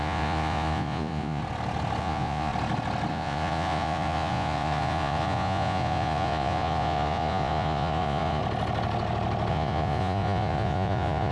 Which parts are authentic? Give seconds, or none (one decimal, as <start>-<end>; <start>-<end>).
1.4-2.0; 2.5-3.1; 8.4-9.5